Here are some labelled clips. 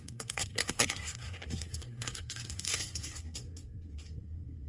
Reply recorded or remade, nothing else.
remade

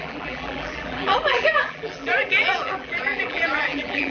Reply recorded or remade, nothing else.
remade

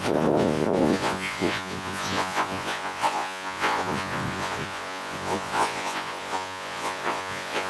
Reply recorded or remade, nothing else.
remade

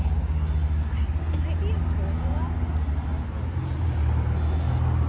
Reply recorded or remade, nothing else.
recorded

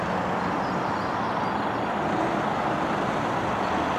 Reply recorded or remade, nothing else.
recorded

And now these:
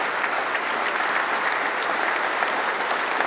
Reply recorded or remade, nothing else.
recorded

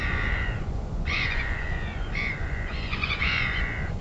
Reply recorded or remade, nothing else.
remade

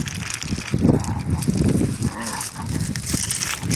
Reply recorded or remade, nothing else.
recorded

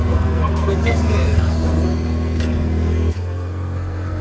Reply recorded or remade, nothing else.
remade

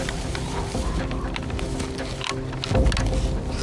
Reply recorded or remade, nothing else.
recorded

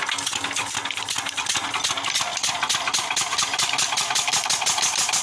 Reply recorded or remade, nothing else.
recorded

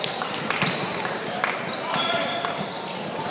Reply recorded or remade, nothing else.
remade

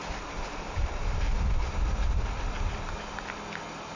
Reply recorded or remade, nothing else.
recorded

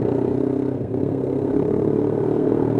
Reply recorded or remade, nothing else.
remade